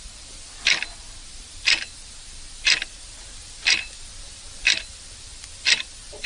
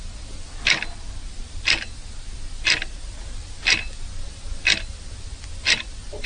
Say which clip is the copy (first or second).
first